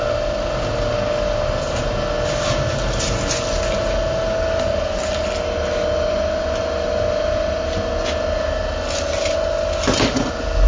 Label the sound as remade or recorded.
recorded